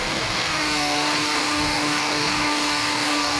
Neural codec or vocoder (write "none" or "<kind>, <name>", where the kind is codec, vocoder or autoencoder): codec, DAC